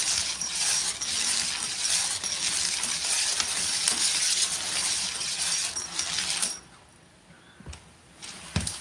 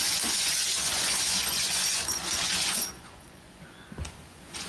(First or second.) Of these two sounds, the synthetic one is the second